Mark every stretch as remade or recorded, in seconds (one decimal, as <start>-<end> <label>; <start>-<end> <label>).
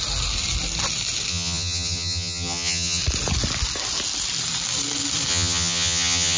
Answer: 0.0-1.3 recorded; 1.3-3.0 remade; 3.0-5.3 recorded; 5.3-6.4 remade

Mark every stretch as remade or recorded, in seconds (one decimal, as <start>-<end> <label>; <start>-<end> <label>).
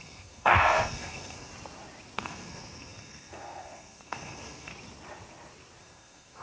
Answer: 0.0-1.5 remade; 1.5-2.2 recorded; 2.2-4.7 remade; 4.7-5.8 recorded; 5.8-6.4 remade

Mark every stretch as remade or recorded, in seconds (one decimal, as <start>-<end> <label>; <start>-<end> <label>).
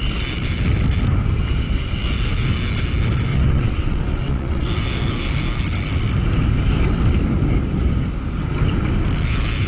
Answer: 0.0-3.3 recorded; 3.3-4.6 remade; 4.6-9.7 recorded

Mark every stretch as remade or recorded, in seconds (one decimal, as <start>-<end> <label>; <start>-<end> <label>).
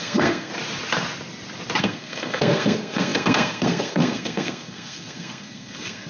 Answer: 0.0-0.5 remade; 0.5-1.8 recorded; 1.8-6.1 remade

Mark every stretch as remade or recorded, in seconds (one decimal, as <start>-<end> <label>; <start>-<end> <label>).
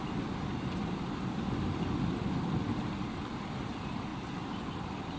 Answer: 0.0-5.2 recorded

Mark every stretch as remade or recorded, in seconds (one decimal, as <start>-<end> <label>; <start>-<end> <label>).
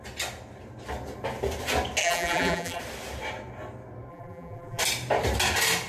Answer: 0.0-2.0 recorded; 2.0-2.8 remade; 2.8-4.1 recorded; 4.1-4.8 remade; 4.8-5.9 recorded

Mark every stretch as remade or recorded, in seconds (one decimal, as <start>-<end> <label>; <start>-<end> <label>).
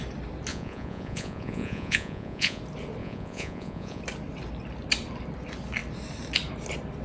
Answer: 0.0-0.5 recorded; 0.5-2.6 remade; 2.6-3.0 recorded; 3.0-4.0 remade; 4.0-7.0 recorded